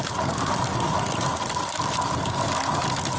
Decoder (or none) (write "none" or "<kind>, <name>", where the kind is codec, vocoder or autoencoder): none